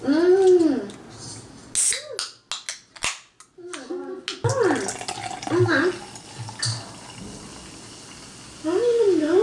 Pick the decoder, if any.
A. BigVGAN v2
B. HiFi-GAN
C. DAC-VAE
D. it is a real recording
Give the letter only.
D